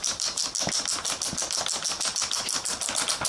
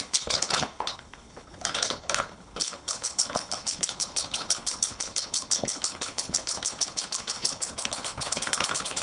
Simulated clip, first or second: second